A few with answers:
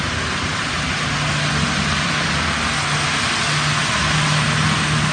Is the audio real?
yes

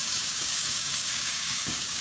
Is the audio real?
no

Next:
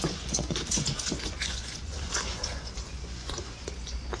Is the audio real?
no